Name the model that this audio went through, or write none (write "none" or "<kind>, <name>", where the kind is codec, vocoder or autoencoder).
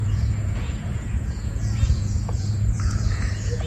vocoder, Vocos